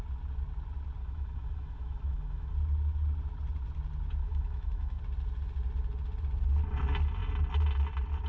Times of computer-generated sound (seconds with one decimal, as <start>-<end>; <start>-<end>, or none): 1.0-2.5; 4.2-5.0